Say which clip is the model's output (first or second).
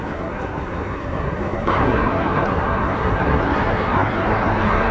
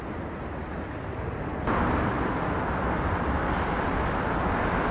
first